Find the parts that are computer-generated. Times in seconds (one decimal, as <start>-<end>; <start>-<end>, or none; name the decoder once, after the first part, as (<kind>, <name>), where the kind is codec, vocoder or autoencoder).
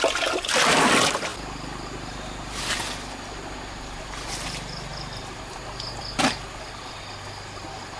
none